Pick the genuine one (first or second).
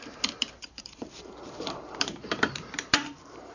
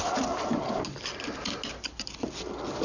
second